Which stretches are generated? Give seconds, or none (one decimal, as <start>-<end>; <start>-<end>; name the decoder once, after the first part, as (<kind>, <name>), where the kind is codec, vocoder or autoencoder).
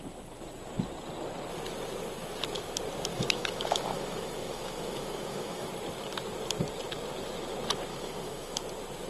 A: 3.1-5.7 (autoencoder, DAC-VAE); 7.9-8.6